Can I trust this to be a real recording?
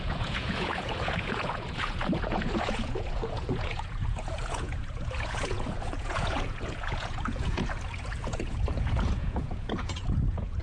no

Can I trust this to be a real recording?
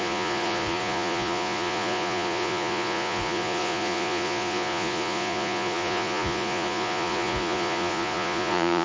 no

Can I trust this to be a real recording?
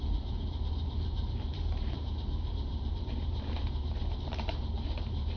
no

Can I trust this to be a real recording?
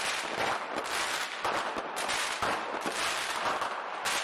yes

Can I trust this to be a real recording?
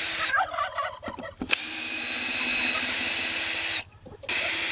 yes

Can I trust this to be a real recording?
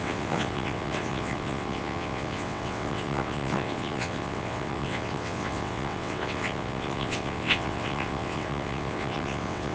no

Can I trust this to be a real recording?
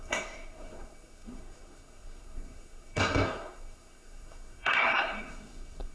no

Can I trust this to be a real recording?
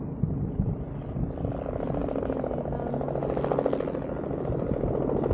yes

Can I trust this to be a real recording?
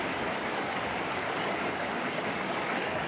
no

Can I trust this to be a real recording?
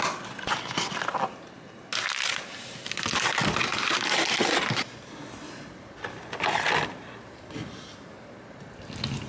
yes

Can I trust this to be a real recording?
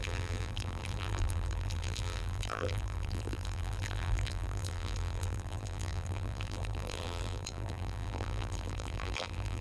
no